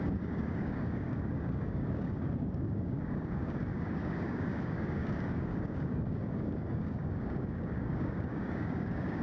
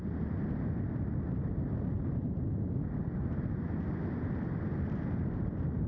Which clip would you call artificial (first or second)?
first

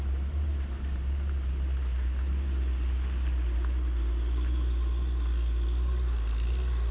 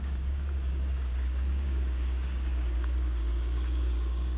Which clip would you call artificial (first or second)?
second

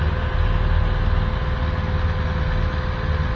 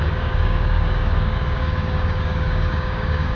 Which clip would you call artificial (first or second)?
second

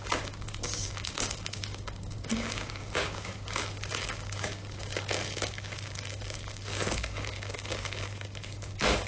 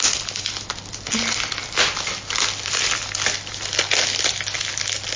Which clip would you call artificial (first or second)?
first